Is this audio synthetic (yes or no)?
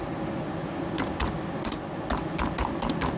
no